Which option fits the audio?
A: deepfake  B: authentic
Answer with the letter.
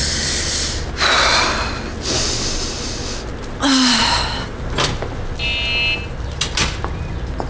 B